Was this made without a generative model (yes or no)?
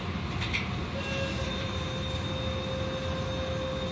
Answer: yes